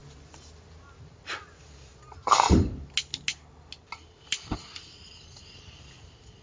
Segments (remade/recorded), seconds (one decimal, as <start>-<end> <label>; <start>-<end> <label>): 0.0-6.4 recorded

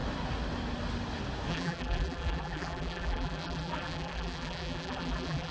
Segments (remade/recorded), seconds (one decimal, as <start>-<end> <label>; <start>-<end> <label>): 0.0-1.5 recorded; 1.5-5.5 remade

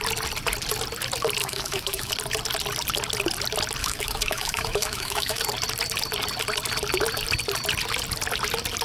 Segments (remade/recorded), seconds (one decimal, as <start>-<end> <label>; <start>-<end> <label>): 0.0-1.4 recorded; 1.4-2.1 remade; 2.1-3.8 recorded; 3.8-5.4 remade; 5.4-8.8 recorded

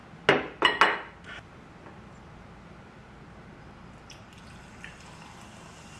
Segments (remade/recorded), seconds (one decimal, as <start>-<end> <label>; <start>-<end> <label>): 0.0-3.6 recorded; 3.6-6.0 remade